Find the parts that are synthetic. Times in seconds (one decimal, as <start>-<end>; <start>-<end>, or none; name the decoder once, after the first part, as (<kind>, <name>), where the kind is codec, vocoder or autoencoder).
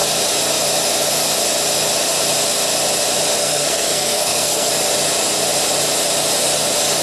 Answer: 3.4-4.7 (codec, SNAC)